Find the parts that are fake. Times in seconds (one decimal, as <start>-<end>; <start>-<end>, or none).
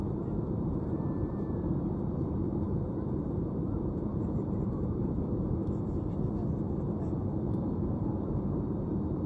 0.0-5.6; 6.9-9.3